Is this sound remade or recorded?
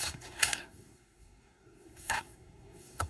remade